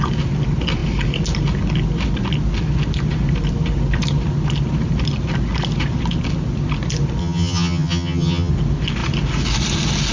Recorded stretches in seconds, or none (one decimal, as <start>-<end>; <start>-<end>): 0.0-7.2; 8.5-10.1